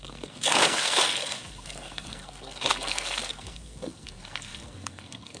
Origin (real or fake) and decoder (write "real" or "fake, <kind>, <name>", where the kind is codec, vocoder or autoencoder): fake, codec, SNAC